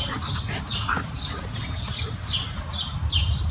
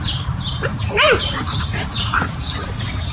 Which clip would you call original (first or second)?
first